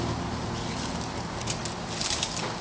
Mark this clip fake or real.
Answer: real